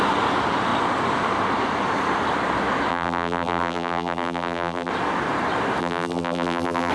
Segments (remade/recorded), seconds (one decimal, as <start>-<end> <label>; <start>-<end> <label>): 0.0-2.9 recorded; 2.9-4.9 remade; 4.9-5.8 recorded; 5.8-6.9 remade